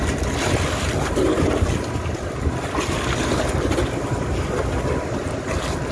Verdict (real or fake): real